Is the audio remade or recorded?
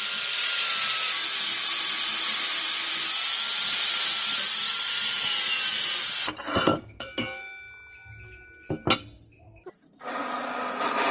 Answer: recorded